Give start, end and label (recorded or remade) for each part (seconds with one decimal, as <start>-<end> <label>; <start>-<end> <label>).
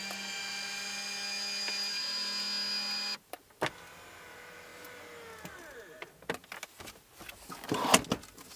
0.0-8.6 recorded